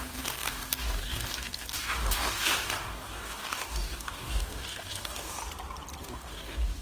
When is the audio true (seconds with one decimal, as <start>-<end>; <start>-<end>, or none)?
5.4-6.0